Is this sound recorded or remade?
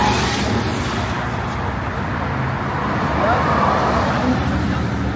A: recorded